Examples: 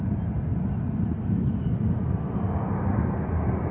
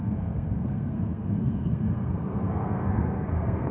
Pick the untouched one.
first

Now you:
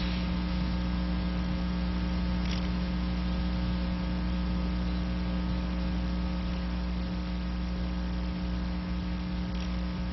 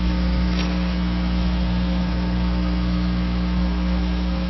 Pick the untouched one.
first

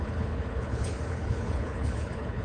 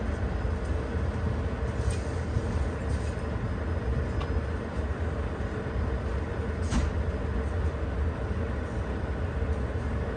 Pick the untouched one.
second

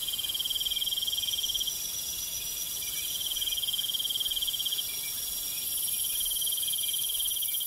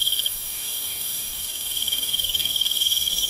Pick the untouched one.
first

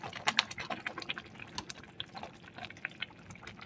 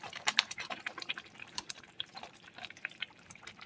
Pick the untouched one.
first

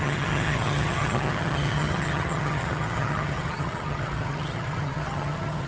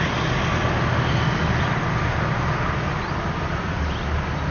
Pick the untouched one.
second